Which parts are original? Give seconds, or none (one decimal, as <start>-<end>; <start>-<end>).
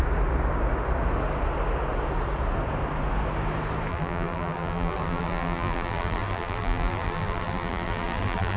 0.0-3.9